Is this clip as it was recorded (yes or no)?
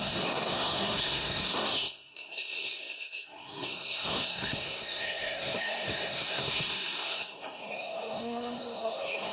no